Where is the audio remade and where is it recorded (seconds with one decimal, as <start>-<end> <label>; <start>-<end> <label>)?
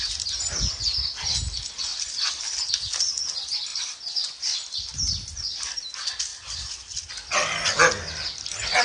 0.0-3.7 recorded; 3.7-5.6 remade; 5.6-6.3 recorded; 6.3-7.1 remade; 7.1-8.8 recorded